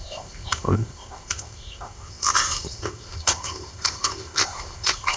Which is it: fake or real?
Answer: fake